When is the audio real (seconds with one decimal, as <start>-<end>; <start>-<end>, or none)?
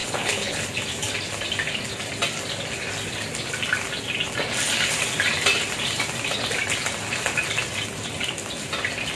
0.8-9.2